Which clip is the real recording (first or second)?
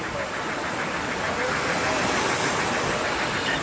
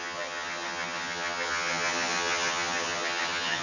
first